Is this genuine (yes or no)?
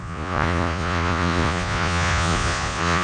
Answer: no